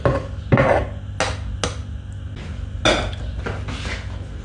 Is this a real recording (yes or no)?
yes